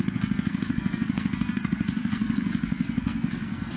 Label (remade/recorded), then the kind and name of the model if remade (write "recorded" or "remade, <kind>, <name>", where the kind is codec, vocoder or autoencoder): remade, codec, SNAC